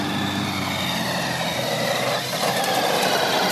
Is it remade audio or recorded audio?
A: recorded